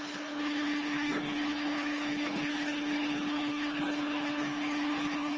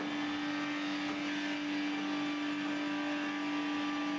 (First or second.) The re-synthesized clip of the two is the first